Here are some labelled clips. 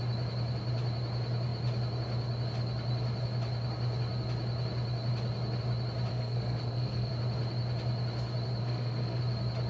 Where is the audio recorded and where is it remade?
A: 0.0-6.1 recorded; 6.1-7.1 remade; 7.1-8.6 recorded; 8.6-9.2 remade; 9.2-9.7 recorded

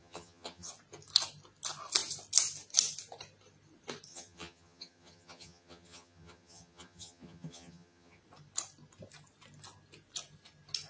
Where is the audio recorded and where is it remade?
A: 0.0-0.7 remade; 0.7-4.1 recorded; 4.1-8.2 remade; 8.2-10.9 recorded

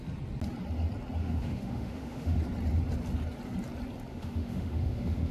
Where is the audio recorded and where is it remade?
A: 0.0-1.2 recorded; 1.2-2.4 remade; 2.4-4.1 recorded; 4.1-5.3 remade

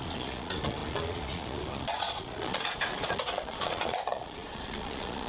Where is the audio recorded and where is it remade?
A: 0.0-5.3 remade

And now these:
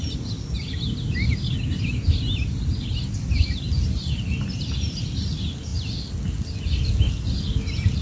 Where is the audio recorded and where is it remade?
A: 0.0-8.0 recorded